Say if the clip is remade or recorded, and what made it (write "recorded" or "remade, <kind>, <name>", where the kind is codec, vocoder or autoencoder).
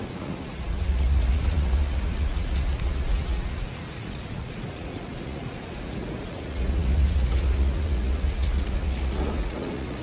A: remade, vocoder, Vocos